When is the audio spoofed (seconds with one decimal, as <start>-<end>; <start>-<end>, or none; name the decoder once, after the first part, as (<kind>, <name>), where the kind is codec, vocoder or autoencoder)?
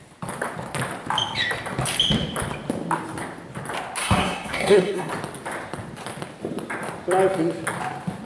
4.0-5.1 (codec, SNAC)